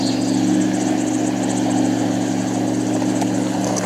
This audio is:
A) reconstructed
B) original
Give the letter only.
B